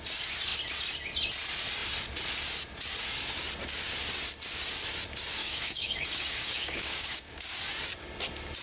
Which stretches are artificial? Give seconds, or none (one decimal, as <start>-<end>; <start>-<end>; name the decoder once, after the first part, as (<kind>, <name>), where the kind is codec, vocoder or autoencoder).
5.4-7.6 (codec, DAC)